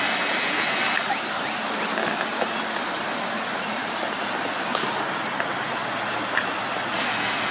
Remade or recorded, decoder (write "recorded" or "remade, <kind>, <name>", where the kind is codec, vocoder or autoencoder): recorded